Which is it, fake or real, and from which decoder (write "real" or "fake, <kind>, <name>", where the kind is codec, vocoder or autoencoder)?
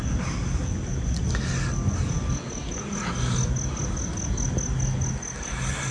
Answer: real